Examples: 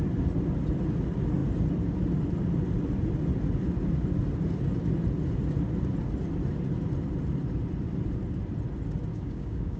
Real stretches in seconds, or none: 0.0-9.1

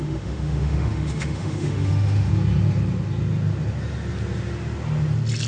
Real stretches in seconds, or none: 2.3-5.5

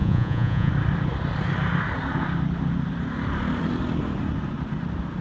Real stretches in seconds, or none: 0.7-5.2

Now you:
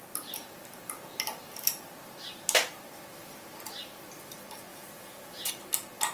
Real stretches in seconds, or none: 0.0-4.7; 5.5-6.1

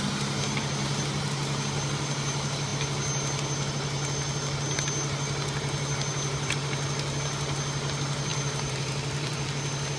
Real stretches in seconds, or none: 0.0-8.3; 9.5-10.0

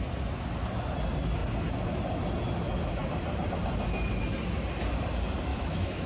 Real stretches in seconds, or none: 0.0-5.5

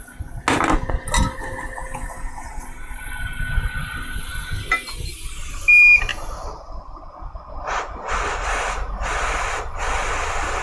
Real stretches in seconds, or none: 0.0-10.6